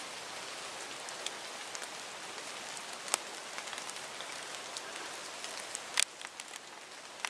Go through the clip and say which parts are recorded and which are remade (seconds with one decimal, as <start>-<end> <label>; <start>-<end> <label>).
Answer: 0.0-7.3 recorded